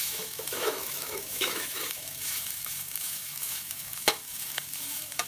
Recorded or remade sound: remade